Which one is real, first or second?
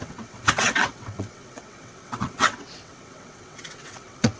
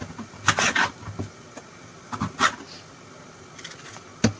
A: second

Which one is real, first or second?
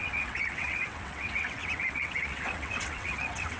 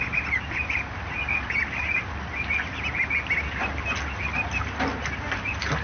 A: second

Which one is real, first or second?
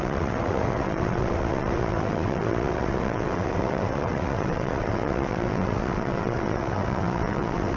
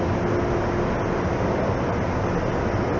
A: second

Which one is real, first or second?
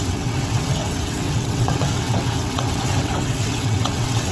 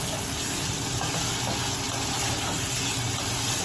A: second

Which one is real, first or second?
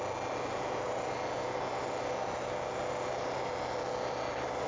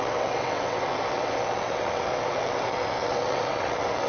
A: first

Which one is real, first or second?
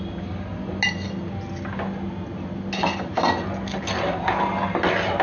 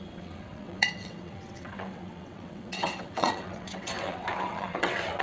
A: first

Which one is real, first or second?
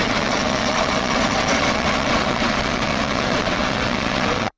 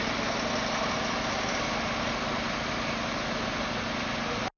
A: second